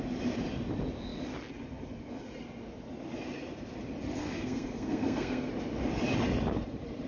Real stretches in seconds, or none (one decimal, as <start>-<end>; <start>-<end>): 0.0-4.2; 5.5-7.1